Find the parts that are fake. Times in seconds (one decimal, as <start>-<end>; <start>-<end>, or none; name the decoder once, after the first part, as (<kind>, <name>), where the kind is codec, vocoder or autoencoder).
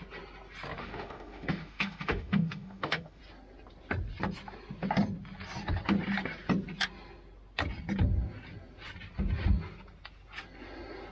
0.8-3.2 (autoencoder, DAC-VAE)